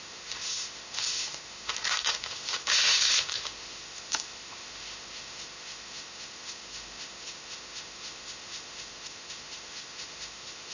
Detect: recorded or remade remade